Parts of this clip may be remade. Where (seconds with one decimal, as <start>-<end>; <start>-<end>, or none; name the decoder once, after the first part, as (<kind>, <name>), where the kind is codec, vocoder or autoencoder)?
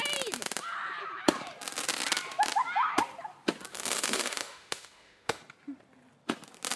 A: 3.7-5.4 (autoencoder, DAC-VAE)